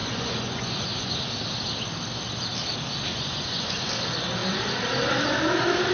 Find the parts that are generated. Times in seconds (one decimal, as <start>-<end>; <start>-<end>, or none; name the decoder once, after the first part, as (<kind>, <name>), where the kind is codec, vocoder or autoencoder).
0.0-1.1 (vocoder, Vocos); 3.1-3.9